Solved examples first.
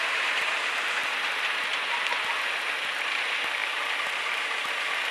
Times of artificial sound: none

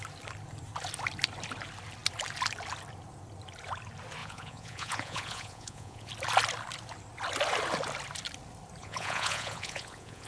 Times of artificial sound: 4.2-6.1; 8.8-10.3

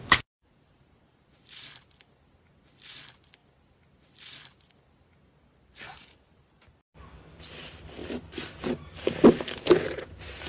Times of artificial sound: 0.4-2.0; 3.4-4.7